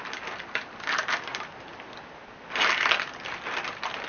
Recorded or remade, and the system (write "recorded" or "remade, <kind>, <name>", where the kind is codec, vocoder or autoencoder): recorded